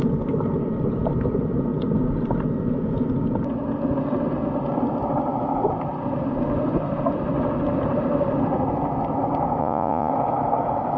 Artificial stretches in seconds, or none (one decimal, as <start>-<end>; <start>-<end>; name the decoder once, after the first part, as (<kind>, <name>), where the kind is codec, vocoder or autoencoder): 9.6-10.1 (vocoder, Vocos)